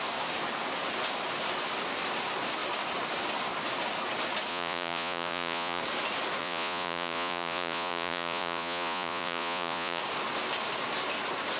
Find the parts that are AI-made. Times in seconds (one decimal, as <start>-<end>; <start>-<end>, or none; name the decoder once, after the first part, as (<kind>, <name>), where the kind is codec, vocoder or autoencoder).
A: 4.5-5.8 (vocoder, Vocos); 6.4-10.0